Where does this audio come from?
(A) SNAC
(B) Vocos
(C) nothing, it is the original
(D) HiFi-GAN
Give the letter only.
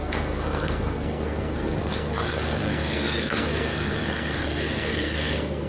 A